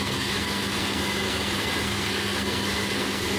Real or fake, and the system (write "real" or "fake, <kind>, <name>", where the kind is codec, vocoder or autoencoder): fake, codec, SNAC